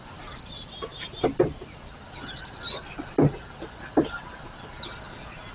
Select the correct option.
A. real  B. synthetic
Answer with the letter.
A